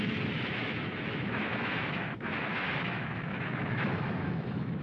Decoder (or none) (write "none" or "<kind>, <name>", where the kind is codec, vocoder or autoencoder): autoencoder, DAC-VAE